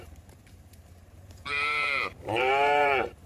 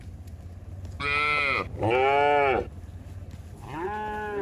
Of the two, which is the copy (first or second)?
first